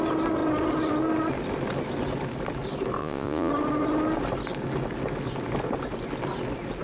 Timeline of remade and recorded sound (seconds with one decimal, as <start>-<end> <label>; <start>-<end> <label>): 0.0-3.0 recorded; 3.0-3.5 remade; 3.5-6.8 recorded